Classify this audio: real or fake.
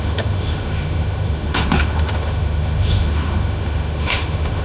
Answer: fake